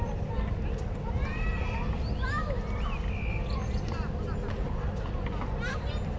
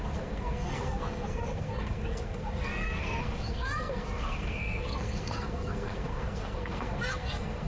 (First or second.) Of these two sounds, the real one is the first